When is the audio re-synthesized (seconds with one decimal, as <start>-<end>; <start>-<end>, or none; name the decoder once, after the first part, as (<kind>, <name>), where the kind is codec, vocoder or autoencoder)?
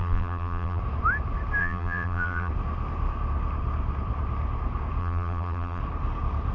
0.0-0.8 (vocoder, BigVGAN v2); 1.6-2.5; 5.0-5.8